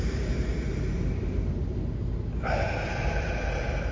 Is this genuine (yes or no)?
yes